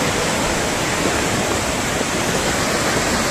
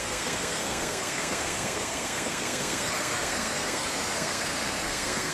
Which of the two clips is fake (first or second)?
second